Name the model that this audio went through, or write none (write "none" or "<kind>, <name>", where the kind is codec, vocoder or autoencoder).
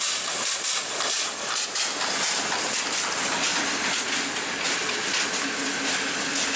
none